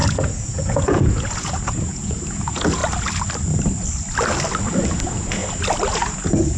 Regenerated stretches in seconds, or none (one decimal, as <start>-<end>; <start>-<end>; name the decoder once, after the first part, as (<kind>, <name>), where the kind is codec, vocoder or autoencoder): 0.0-2.8 (vocoder, Vocos); 5.0-5.4; 5.9-6.6